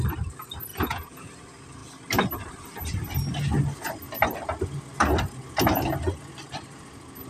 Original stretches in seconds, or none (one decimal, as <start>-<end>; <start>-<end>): 0.0-0.7; 1.3-7.3